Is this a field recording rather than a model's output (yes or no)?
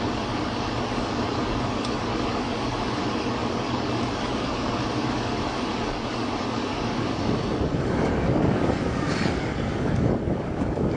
no